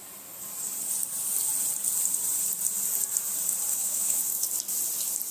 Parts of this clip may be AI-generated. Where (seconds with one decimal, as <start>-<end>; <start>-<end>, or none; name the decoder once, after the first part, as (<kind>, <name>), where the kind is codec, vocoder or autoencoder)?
3.7-4.5 (autoencoder, DAC-VAE)